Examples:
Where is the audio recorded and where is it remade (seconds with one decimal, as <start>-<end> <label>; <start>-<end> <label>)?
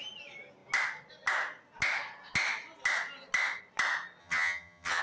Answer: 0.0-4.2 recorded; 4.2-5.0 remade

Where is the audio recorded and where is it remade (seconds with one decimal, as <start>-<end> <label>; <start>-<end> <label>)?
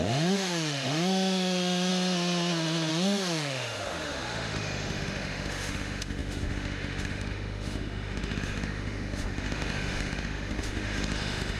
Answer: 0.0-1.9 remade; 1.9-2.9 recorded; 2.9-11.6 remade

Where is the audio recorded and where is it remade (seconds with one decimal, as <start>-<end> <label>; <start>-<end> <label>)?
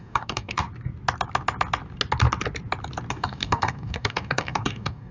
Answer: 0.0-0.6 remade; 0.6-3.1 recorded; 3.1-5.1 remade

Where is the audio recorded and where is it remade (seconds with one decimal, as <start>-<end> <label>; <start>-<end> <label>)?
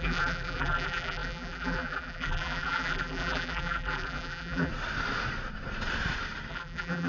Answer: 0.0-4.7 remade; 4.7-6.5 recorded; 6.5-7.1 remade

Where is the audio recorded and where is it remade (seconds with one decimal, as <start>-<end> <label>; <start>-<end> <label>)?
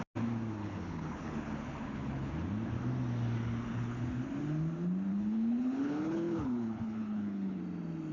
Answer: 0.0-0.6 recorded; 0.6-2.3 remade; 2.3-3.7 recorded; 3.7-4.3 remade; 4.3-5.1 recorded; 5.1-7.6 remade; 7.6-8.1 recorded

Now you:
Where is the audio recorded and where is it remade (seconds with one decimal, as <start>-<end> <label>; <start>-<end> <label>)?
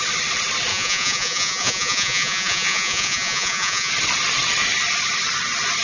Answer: 0.0-0.7 recorded; 0.7-3.9 remade; 3.9-5.8 recorded